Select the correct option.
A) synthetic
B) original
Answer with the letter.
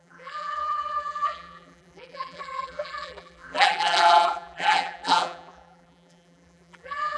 A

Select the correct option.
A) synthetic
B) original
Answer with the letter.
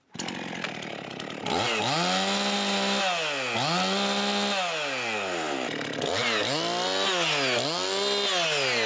B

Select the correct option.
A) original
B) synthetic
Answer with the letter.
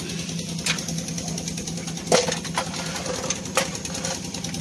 A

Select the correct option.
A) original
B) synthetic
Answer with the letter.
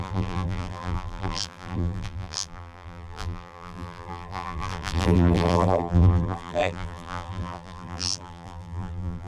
B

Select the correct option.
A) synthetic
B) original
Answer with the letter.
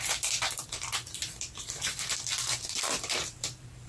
A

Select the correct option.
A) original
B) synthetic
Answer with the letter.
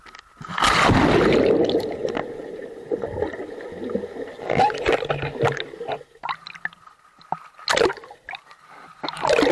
A